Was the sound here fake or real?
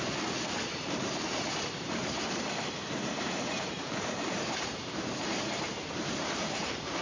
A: fake